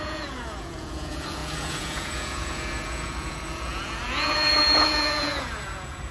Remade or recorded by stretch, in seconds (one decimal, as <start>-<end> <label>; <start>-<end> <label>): 0.0-6.1 remade